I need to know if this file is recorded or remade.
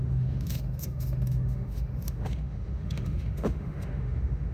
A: remade